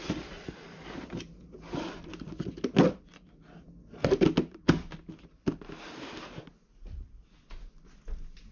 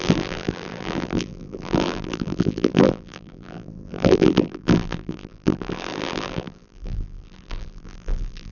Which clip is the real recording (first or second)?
first